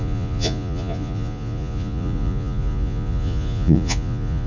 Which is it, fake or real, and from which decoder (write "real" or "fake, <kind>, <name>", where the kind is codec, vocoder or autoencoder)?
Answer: fake, vocoder, Vocos